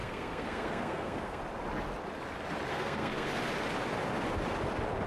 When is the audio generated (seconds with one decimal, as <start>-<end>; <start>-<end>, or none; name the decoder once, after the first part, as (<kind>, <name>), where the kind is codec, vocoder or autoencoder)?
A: 0.0-1.4 (codec, SNAC); 2.7-3.3